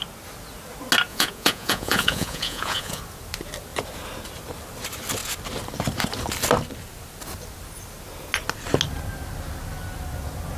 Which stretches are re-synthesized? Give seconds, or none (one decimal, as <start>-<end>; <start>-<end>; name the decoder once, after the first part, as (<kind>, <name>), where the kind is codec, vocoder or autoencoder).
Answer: 1.1-3.0 (vocoder, Vocos)